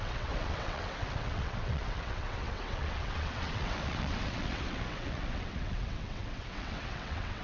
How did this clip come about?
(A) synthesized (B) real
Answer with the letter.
A